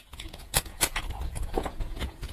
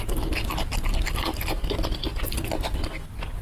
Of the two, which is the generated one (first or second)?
first